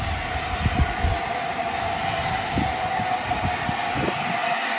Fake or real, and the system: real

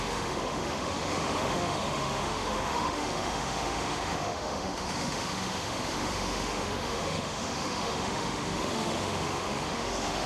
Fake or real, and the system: fake, autoencoder, DAC-VAE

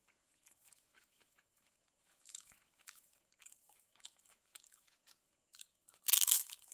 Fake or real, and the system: fake, autoencoder, DAC-VAE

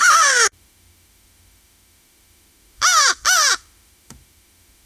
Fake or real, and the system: fake, autoencoder, DAC-VAE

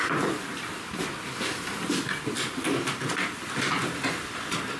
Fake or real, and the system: real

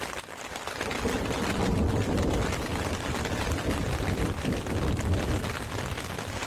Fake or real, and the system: real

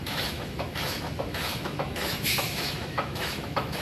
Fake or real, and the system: fake, autoencoder, DAC-VAE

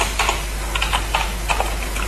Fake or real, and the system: real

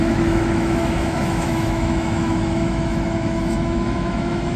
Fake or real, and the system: fake, autoencoder, DAC-VAE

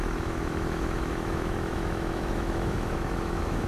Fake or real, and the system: fake, autoencoder, DAC-VAE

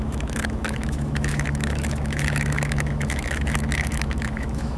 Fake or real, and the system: fake, autoencoder, DAC-VAE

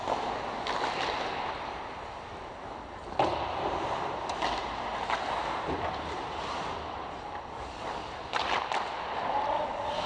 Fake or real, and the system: real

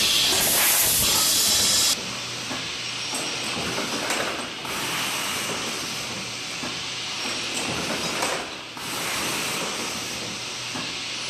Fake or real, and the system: real